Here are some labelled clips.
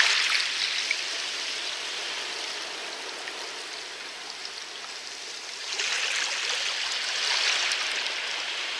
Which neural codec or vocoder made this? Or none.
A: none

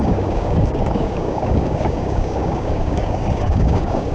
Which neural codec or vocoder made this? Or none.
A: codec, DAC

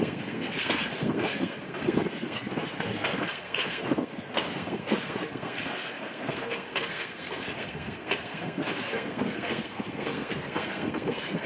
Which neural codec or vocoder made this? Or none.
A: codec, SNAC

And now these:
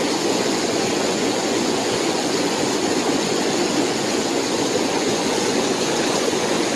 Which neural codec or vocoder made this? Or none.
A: vocoder, Vocos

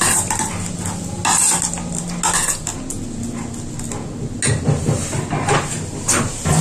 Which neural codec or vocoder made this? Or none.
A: none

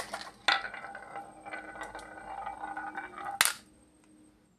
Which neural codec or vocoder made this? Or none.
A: none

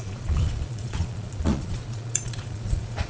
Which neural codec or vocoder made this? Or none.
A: vocoder, Vocos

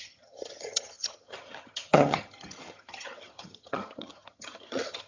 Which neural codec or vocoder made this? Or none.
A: vocoder, HiFi-GAN